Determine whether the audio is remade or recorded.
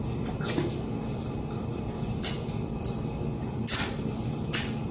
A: recorded